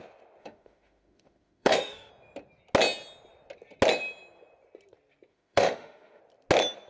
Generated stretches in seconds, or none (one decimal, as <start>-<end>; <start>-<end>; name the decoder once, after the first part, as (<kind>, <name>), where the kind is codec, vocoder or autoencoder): 0.4-2.1 (autoencoder, DAC-VAE); 5.3-6.2